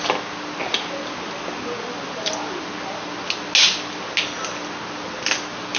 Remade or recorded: recorded